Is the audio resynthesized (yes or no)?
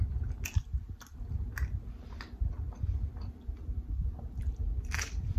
no